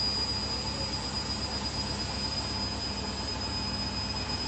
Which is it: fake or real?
real